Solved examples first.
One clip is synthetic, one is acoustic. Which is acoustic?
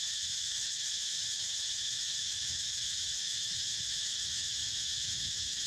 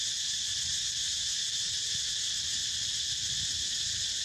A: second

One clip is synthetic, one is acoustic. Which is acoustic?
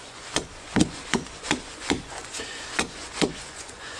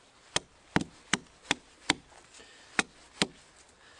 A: second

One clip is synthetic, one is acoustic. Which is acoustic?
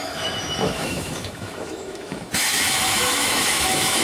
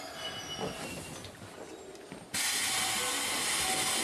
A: second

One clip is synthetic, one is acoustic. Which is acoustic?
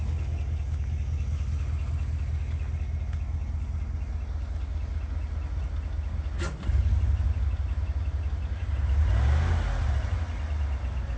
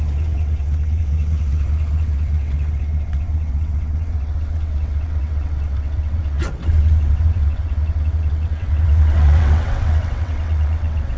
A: first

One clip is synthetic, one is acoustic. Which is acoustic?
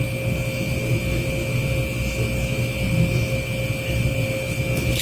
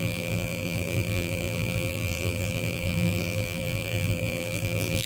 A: first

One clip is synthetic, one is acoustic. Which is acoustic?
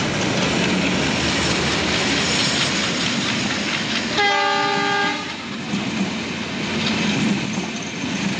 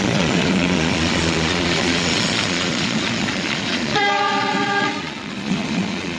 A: first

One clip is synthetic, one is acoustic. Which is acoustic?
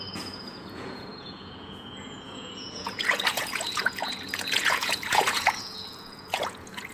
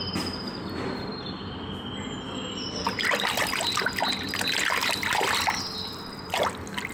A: second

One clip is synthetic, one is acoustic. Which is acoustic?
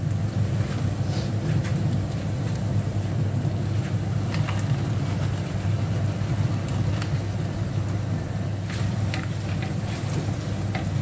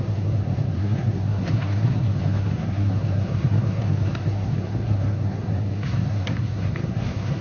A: first